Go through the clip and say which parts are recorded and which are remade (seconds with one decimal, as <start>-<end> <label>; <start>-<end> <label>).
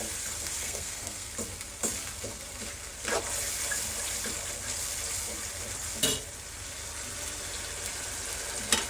0.0-0.6 recorded; 0.6-1.3 remade; 1.3-8.9 recorded